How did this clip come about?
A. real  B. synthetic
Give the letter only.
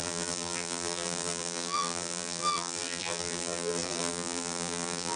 B